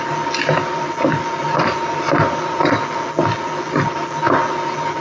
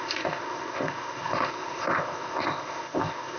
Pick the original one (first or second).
first